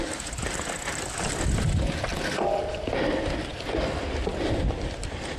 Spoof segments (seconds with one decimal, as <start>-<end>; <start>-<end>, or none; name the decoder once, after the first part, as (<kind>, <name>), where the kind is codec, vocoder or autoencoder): none